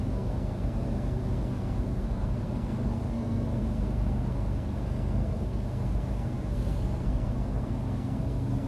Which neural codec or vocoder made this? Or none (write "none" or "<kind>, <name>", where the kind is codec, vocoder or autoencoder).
codec, SNAC